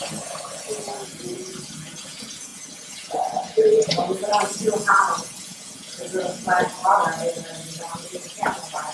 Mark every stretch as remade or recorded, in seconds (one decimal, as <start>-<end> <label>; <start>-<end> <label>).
0.0-6.8 remade; 6.8-8.0 recorded; 8.0-8.9 remade

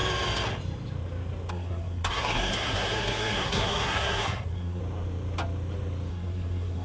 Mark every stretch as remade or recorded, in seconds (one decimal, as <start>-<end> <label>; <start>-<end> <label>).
0.0-1.5 recorded; 1.5-4.8 remade; 4.8-6.1 recorded; 6.1-6.8 remade

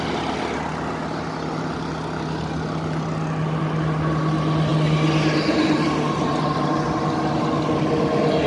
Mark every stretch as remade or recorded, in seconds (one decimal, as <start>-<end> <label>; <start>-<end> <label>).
0.0-8.5 recorded

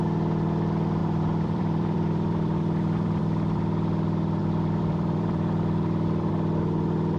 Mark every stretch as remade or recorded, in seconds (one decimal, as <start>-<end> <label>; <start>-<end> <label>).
0.0-1.0 recorded; 1.0-3.2 remade; 3.2-4.4 recorded; 4.4-6.3 remade; 6.3-7.2 recorded